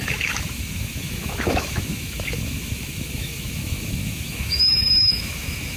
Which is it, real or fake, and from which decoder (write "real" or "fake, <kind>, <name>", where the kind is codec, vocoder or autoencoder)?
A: fake, autoencoder, DAC-VAE